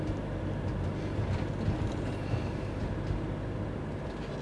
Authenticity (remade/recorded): recorded